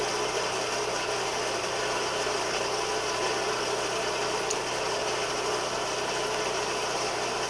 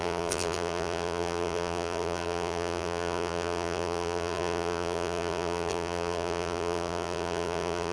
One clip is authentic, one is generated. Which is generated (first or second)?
second